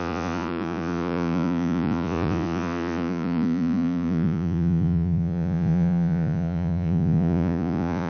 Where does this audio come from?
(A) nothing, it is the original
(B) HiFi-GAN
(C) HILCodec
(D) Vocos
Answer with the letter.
D